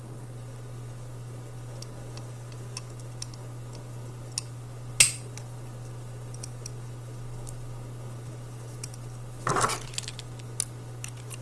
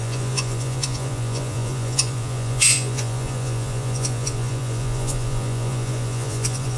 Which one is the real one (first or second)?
first